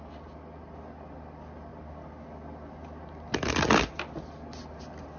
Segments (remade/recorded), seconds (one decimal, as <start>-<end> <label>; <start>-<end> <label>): 0.0-5.2 recorded